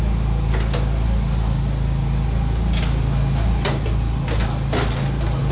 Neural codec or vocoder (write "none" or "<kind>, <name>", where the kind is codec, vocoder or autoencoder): none